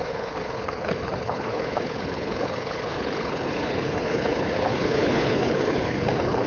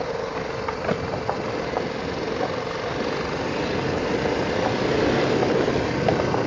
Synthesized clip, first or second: first